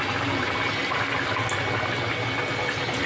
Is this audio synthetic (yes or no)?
no